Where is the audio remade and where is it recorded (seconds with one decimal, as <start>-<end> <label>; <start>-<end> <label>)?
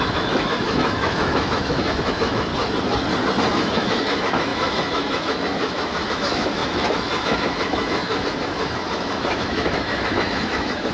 0.0-2.5 remade; 2.5-3.5 recorded; 3.5-10.9 remade